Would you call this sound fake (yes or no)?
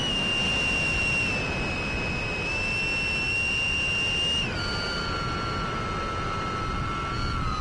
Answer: no